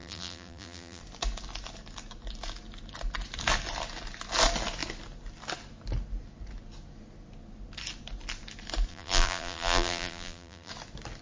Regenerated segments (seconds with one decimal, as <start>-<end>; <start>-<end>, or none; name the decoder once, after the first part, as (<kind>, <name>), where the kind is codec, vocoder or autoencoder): 0.0-1.0 (vocoder, BigVGAN v2); 8.9-10.7